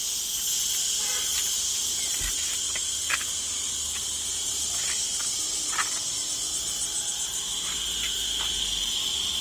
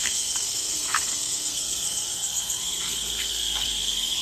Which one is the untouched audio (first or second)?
first